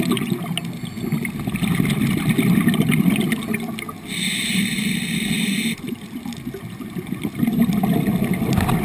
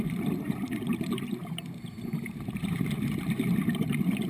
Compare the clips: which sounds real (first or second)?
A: first